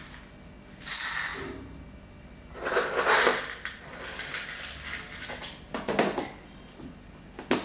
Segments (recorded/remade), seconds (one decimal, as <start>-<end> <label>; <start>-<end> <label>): 0.0-7.6 recorded